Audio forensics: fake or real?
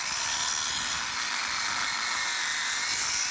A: real